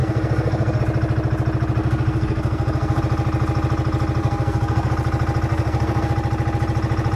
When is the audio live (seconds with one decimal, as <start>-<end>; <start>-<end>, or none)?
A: 0.8-1.8; 3.0-4.2; 4.9-5.5; 6.1-7.2

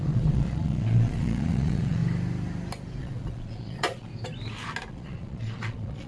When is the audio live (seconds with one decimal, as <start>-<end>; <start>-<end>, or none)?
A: 2.0-3.0; 4.1-4.9

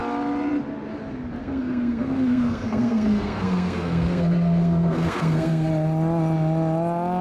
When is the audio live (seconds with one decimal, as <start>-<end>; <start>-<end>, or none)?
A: 0.0-1.4; 5.7-7.2

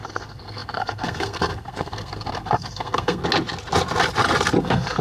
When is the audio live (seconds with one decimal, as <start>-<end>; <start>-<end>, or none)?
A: 3.2-4.6